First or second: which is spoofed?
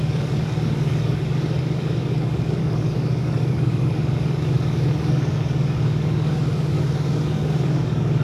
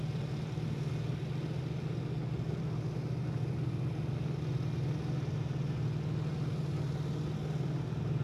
first